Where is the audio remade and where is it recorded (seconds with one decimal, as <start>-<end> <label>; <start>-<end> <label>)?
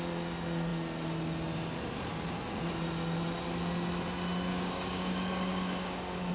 0.0-4.5 recorded; 4.5-6.3 remade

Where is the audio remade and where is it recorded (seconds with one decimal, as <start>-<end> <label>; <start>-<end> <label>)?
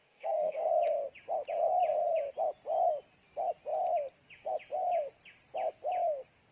0.0-0.7 remade; 0.7-6.5 recorded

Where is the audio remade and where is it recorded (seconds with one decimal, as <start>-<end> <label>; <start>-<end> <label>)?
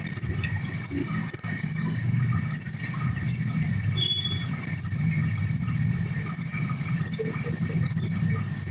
0.0-1.0 recorded; 1.0-2.2 remade; 2.2-8.7 recorded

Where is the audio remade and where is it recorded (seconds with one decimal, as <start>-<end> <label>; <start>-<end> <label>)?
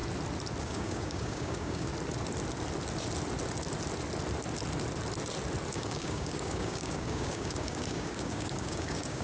0.0-0.6 recorded; 0.6-1.9 remade; 1.9-5.7 recorded; 5.7-9.2 remade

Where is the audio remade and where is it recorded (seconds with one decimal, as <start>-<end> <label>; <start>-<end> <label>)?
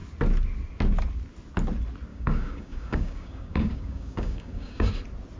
0.0-2.1 recorded; 2.1-4.9 remade; 4.9-5.4 recorded